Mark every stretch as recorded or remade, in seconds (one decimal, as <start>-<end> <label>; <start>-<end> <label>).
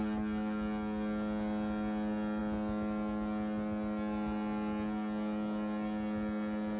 0.0-6.8 recorded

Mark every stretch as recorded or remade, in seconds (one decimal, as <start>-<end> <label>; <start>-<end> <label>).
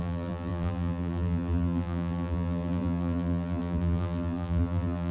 0.0-5.1 remade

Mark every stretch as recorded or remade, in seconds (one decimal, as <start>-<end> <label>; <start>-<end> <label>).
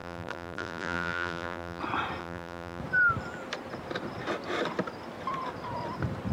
0.0-1.8 remade; 1.8-2.2 recorded; 2.2-2.8 remade; 2.8-6.3 recorded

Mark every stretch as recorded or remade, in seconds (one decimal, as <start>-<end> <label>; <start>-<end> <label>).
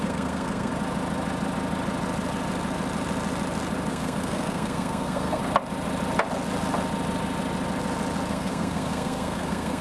0.0-0.7 remade; 0.7-3.9 recorded; 3.9-5.4 remade; 5.4-8.3 recorded; 8.3-9.8 remade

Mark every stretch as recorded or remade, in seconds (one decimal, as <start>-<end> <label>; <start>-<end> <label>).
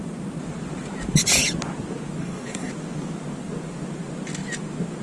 0.0-2.2 recorded; 2.2-2.7 remade; 2.7-5.0 recorded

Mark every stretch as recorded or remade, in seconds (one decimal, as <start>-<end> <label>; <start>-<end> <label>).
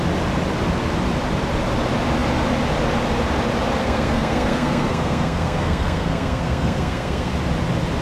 0.0-3.8 recorded; 3.8-7.3 remade; 7.3-8.0 recorded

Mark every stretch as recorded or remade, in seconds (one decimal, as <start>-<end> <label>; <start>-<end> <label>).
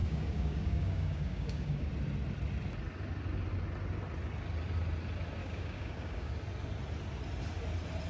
0.0-1.9 remade; 1.9-5.4 recorded; 5.4-6.3 remade; 6.3-8.1 recorded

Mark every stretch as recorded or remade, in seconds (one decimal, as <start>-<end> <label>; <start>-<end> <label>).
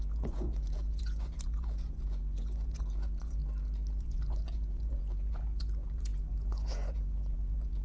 0.0-3.4 remade; 3.4-4.0 recorded; 4.0-7.8 remade